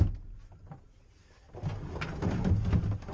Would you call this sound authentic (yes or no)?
yes